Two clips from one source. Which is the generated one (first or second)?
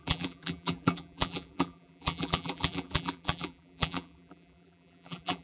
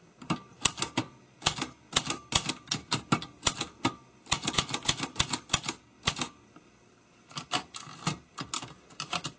first